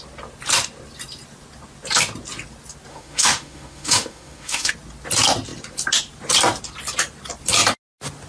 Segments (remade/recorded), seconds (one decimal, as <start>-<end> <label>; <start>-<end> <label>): 0.0-2.9 recorded; 2.9-4.7 remade; 4.7-8.3 recorded